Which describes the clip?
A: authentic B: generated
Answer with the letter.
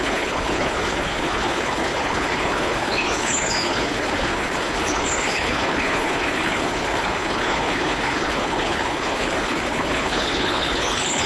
B